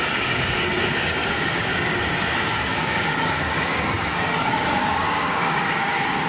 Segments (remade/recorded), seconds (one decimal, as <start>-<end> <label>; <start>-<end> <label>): 0.0-1.7 remade; 1.7-2.3 recorded; 2.3-6.3 remade